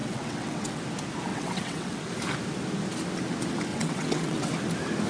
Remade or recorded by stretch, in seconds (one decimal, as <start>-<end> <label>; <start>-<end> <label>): 0.0-0.8 remade; 0.8-1.3 recorded; 1.3-2.0 remade; 2.0-3.7 recorded; 3.7-4.5 remade; 4.5-5.1 recorded